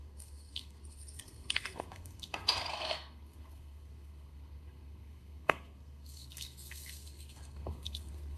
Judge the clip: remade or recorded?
remade